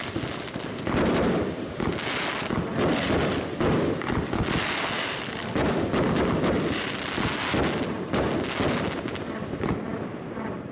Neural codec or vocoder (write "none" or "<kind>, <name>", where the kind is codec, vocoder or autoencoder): none